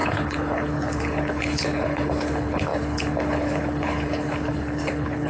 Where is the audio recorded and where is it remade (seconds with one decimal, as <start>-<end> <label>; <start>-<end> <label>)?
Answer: 0.0-5.3 remade